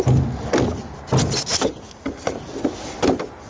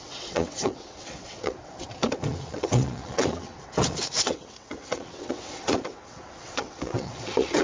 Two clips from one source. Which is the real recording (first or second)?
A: first